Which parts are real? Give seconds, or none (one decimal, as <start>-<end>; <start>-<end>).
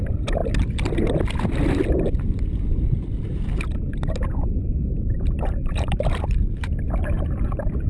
0.4-5.0